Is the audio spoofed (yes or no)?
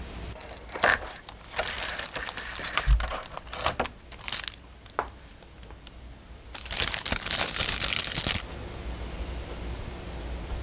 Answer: no